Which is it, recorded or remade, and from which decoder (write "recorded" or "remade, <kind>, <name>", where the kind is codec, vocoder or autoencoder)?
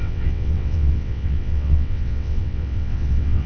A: remade, vocoder, WaveNeXt